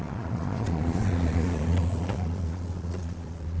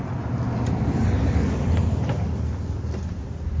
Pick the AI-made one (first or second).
first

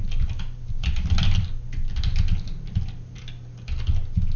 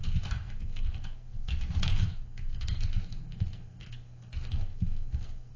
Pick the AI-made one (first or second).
second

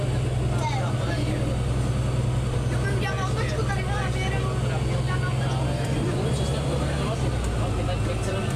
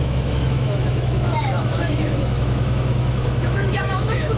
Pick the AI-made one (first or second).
second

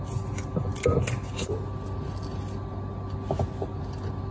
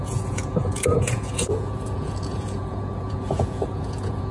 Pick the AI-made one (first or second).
second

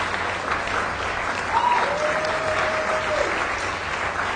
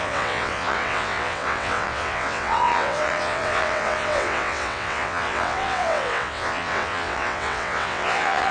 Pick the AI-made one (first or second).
second